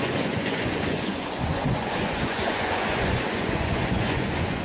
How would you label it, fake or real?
fake